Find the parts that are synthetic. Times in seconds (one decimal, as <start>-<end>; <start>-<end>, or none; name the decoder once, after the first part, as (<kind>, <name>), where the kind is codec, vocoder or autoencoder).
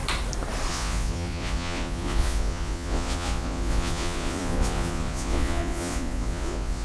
0.7-6.8 (vocoder, Vocos)